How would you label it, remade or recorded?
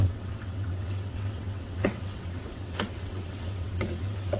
remade